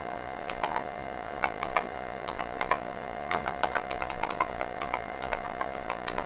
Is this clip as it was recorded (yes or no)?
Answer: no